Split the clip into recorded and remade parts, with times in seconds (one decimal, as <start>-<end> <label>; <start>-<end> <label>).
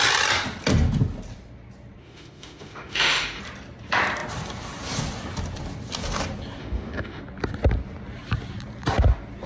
0.0-2.0 recorded; 2.0-3.4 remade; 3.4-6.6 recorded; 6.6-7.2 remade; 7.2-9.5 recorded